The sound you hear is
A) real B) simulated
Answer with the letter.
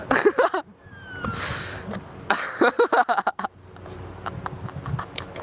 A